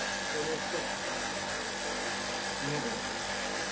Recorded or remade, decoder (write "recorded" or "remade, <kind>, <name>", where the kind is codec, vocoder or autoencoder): recorded